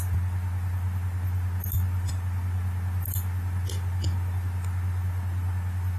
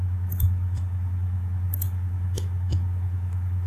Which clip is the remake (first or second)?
second